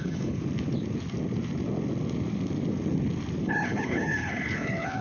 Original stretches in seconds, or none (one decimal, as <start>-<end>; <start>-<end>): 0.4-3.4